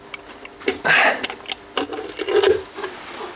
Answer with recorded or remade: recorded